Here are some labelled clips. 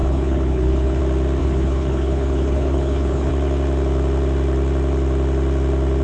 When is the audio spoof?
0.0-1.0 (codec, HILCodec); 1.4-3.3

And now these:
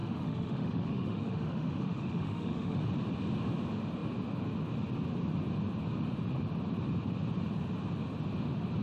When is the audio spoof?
0.0-2.8 (autoencoder, DAC-VAE)

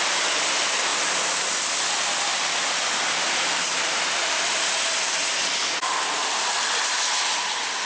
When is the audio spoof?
0.0-0.9 (vocoder, BigVGAN v2); 1.8-5.4

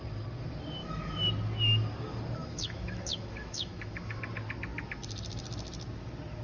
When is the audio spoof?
0.8-1.3 (autoencoder, DAC-VAE); 2.4-4.2

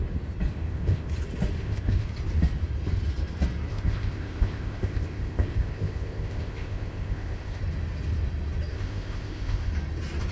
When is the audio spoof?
0.5-1.1 (codec, ZipCodec); 1.6-2.1; 3.7-7.6; 8.7-9.7

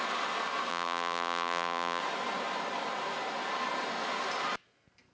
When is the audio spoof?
0.7-2.0 (vocoder, BigVGAN v2)

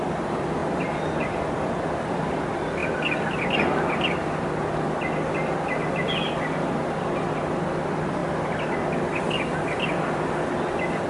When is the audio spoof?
none